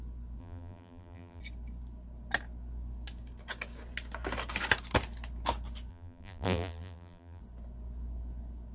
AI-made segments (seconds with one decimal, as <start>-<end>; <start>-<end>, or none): 0.4-1.4; 5.9-7.4